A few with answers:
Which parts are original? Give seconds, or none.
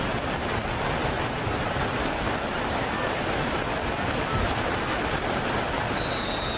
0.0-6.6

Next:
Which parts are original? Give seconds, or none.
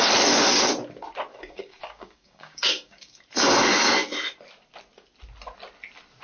0.0-1.3; 3.2-6.2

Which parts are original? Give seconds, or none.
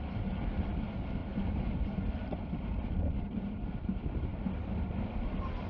0.0-5.7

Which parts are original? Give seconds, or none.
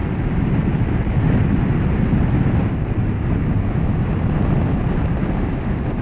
0.0-6.0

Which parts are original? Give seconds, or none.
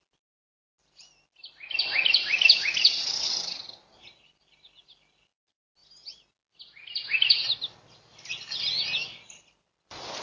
0.0-10.2